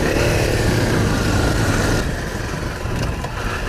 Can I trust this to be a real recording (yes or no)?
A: yes